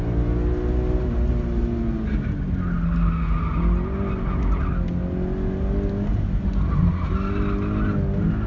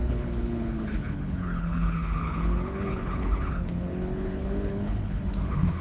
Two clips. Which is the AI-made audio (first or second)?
second